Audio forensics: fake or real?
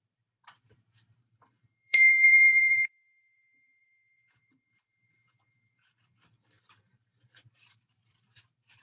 fake